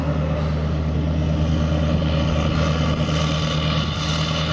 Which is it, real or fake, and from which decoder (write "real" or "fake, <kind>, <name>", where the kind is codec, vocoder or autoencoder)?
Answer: real